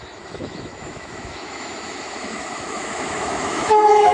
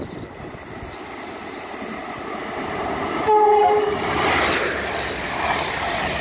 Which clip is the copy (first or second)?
first